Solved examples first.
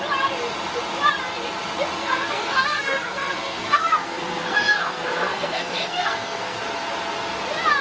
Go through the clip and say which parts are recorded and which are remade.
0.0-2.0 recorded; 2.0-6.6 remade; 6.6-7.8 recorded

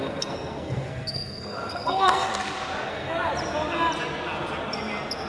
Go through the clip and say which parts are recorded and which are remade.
0.0-2.3 remade; 2.3-2.9 recorded; 2.9-3.3 remade; 3.3-5.3 recorded